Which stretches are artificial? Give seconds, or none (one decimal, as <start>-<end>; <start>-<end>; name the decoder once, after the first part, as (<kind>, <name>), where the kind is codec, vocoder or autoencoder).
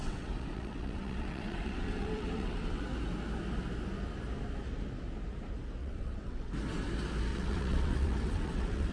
0.0-2.8 (vocoder, WaveNeXt); 5.8-6.5; 7.3-8.9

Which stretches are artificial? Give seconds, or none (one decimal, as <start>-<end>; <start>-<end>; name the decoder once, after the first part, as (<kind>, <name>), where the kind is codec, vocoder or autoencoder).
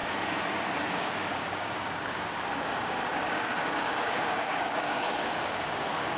0.9-6.2 (codec, DAC)